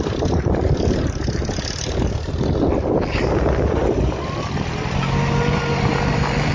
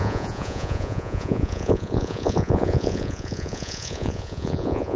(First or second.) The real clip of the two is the first